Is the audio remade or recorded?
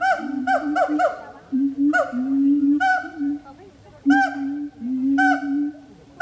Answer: remade